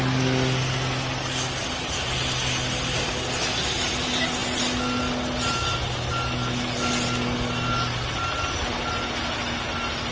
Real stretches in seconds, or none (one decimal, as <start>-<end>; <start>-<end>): 0.0-10.1